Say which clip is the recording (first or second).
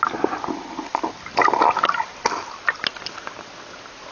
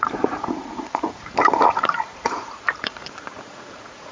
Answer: first